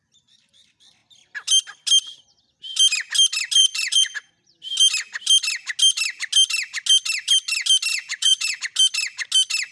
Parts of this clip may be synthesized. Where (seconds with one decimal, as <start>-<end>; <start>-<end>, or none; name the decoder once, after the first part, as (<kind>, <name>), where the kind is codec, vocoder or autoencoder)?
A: 3.6-4.3 (vocoder, Vocos); 7.9-8.6